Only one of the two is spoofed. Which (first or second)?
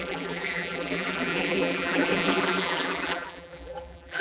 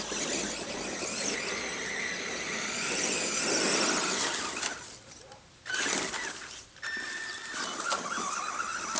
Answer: first